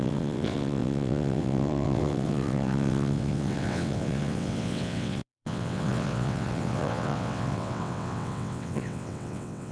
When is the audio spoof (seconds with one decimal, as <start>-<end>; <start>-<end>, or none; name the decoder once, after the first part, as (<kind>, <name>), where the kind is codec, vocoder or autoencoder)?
0.0-9.7 (vocoder, WaveNeXt)